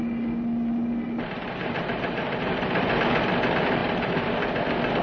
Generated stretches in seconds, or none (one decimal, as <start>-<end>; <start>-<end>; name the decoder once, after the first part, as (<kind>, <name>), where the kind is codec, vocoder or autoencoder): 1.6-3.0 (vocoder, BigVGAN v2); 3.8-4.3